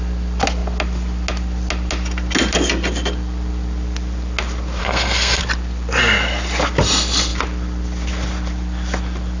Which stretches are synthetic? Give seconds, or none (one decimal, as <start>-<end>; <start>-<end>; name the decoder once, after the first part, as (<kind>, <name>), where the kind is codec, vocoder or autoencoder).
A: 4.8-5.4 (codec, SNAC)